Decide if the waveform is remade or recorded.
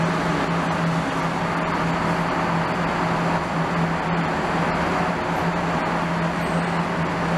recorded